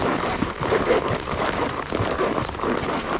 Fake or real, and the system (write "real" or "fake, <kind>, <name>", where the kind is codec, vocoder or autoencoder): fake, vocoder, BigVGAN v2